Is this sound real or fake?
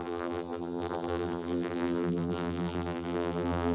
fake